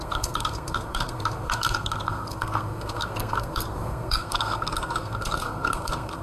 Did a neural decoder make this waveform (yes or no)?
yes